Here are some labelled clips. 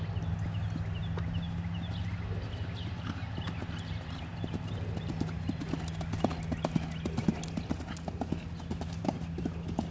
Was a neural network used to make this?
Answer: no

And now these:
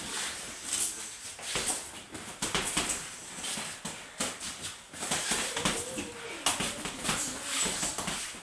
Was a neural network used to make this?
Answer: no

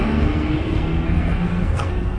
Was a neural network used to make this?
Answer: yes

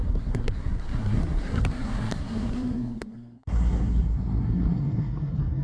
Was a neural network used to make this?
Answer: yes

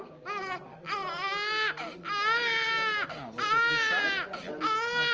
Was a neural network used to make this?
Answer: no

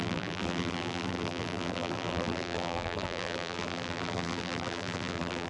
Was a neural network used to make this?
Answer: yes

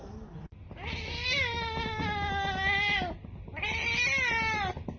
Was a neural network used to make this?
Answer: no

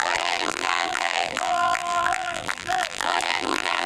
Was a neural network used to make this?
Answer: yes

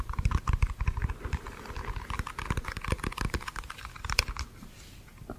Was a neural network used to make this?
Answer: no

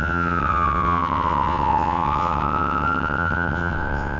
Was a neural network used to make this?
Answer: yes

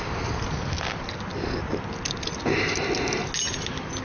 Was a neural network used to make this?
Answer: no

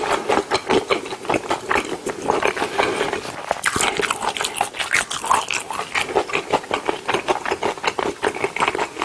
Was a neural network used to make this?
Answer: no